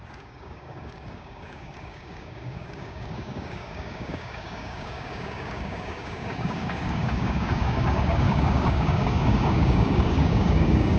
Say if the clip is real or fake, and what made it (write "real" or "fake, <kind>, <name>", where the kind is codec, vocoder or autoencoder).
fake, codec, DAC